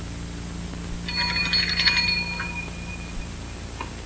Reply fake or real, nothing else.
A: real